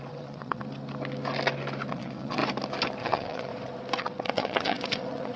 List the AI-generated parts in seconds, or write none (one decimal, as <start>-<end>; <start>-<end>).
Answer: 0.0-0.6; 1.9-2.4; 3.0-3.5; 4.0-5.4

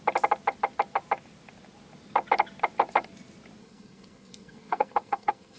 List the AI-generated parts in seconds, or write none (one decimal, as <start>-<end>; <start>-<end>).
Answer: 3.6-5.6

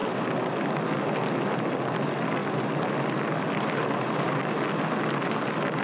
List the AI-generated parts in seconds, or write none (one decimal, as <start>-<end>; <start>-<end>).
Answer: none

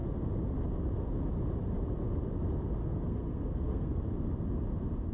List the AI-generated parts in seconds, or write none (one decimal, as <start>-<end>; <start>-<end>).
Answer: 2.8-4.0

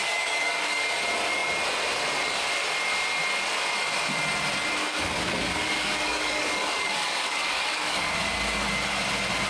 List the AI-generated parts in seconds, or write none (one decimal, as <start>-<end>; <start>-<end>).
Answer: 0.0-0.9; 4.8-8.2